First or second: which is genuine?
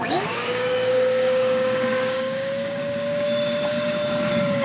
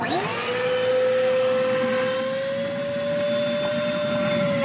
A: second